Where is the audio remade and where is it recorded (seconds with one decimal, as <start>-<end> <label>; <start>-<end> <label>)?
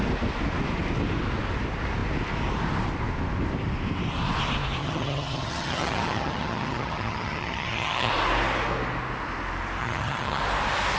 0.0-4.8 recorded; 4.8-8.1 remade; 8.1-9.8 recorded; 9.8-10.4 remade; 10.4-11.0 recorded